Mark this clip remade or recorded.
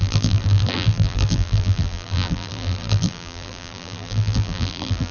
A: remade